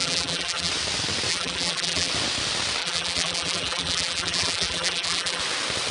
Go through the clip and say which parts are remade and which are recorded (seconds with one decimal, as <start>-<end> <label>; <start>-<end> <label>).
0.0-0.7 remade; 0.7-1.3 recorded; 1.3-2.1 remade; 2.1-2.8 recorded; 2.8-5.4 remade; 5.4-5.9 recorded